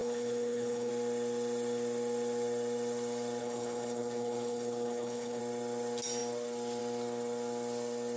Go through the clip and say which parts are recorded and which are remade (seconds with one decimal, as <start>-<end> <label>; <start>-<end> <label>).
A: 0.0-0.9 remade; 0.9-3.4 recorded; 3.4-5.4 remade; 5.4-8.2 recorded